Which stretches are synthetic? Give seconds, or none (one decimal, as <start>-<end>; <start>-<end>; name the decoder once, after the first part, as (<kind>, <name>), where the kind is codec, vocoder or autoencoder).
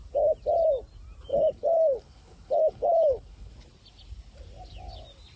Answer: 1.3-3.5 (codec, HILCodec)